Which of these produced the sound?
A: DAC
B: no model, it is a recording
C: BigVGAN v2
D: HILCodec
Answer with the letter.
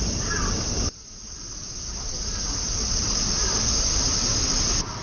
C